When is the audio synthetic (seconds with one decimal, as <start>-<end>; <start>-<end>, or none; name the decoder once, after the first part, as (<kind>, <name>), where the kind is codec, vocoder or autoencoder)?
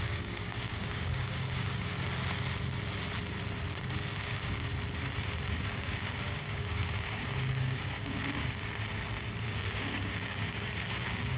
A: 0.0-1.9 (codec, DAC); 4.2-4.7; 5.5-8.4; 9.4-11.4